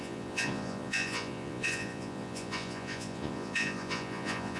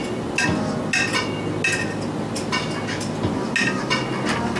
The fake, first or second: first